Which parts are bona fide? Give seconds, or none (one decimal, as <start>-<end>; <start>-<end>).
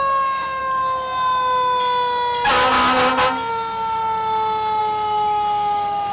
0.6-3.5; 4.0-4.8